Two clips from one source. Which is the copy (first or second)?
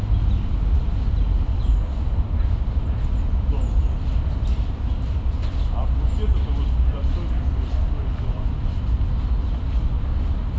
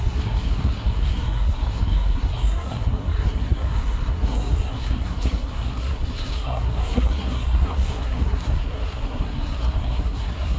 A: second